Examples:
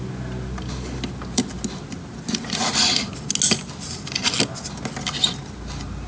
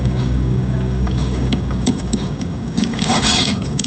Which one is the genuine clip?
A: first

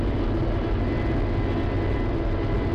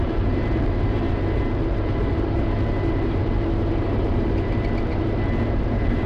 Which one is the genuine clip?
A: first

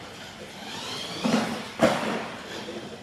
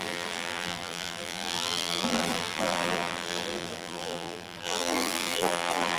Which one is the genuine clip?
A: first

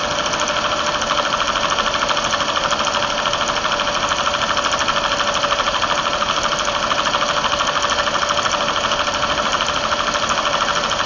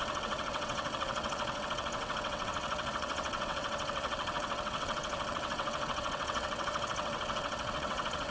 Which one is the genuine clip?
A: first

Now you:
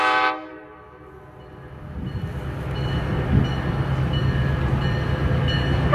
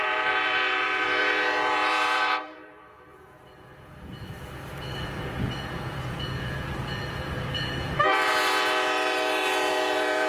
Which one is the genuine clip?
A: first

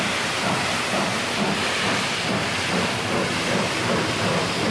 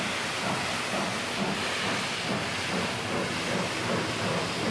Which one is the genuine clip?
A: second